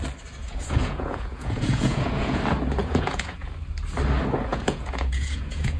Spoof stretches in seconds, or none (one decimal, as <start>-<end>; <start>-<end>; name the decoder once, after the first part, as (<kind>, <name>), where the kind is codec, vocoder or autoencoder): 0.4-2.4 (vocoder, Vocos); 2.8-3.5; 4.5-5.8